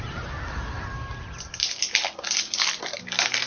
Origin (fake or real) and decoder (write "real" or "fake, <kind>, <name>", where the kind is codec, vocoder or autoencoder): real